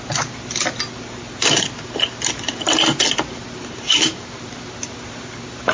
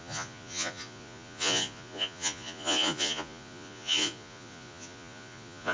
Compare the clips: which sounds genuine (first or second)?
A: first